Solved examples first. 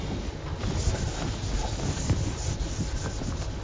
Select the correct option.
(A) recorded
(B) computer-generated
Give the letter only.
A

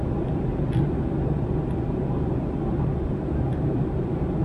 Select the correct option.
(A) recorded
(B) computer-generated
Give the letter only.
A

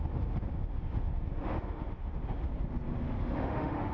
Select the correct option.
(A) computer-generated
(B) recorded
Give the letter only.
A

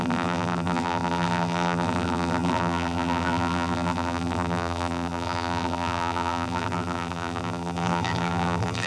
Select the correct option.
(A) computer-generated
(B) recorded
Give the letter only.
A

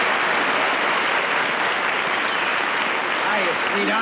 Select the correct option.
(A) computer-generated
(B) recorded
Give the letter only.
B